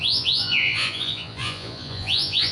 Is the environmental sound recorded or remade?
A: remade